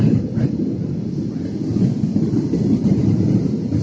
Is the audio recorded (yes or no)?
yes